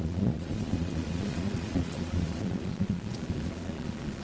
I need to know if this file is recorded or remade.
remade